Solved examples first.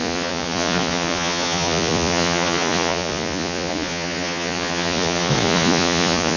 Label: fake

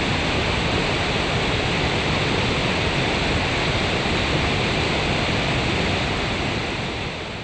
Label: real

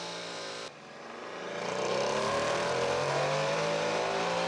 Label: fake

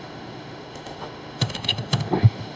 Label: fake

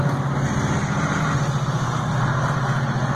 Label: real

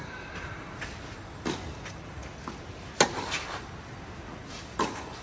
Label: real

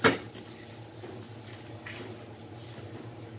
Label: real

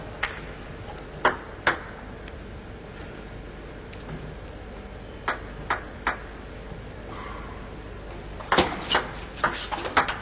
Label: real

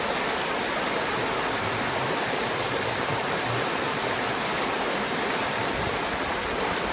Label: real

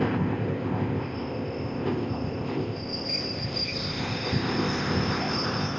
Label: fake